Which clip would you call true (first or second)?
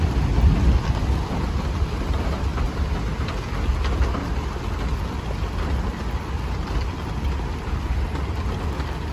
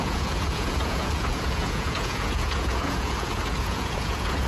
first